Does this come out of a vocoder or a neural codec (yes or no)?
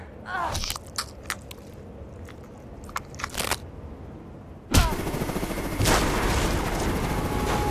no